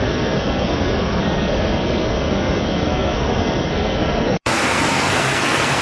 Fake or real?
fake